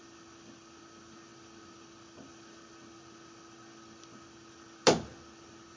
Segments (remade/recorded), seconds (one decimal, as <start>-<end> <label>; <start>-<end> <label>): 0.0-5.8 recorded